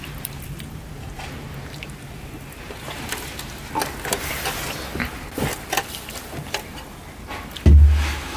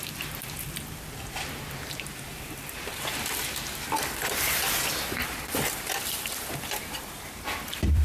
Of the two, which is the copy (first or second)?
second